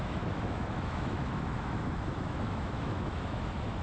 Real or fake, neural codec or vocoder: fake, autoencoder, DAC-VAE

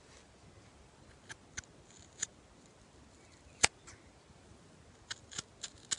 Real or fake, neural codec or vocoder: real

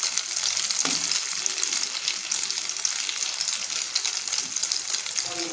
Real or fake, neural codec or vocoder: real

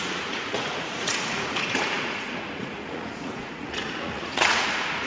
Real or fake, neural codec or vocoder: fake, vocoder, Vocos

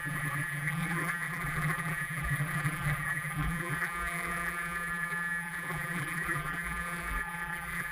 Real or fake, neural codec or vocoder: fake, vocoder, BigVGAN v2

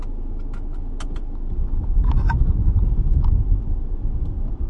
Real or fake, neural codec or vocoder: real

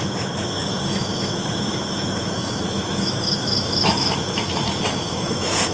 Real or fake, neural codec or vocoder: fake, autoencoder, DAC-VAE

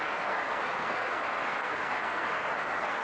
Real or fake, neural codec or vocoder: fake, codec, SNAC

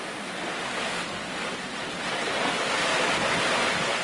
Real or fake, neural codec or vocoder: real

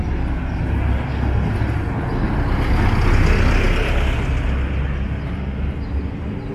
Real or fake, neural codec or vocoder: real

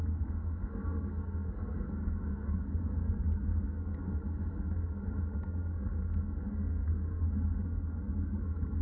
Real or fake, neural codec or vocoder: fake, codec, SNAC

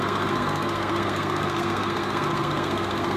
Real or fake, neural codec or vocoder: fake, codec, SNAC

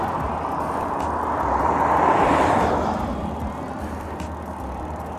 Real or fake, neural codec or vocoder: real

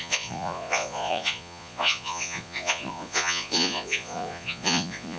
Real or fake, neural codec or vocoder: fake, vocoder, Vocos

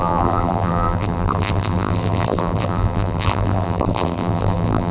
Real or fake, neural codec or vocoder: fake, vocoder, BigVGAN v2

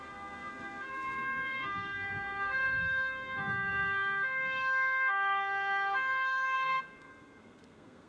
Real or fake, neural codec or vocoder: fake, codec, SNAC